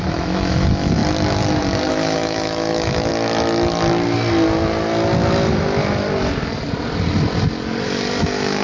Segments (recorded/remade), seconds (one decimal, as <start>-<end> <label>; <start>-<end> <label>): 0.0-1.0 remade; 1.0-1.9 recorded; 1.9-3.1 remade; 3.1-8.2 recorded; 8.2-8.6 remade